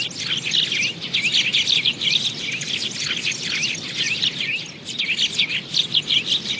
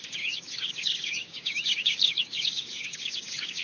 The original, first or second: first